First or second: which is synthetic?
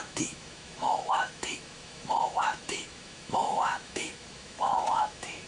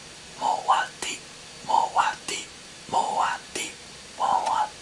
first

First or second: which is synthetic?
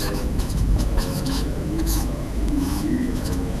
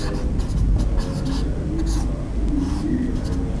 first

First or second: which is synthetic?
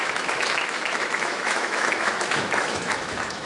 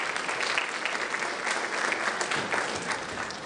first